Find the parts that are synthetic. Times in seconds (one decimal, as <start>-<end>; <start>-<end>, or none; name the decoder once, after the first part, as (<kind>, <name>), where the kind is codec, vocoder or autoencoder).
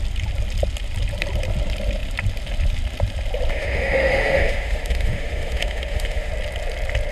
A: 3.5-6.3 (autoencoder, DAC-VAE)